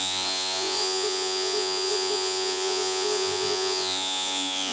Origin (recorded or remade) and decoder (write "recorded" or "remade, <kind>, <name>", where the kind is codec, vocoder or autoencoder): remade, vocoder, Vocos